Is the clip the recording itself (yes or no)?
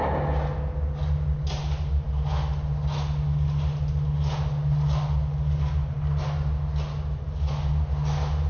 yes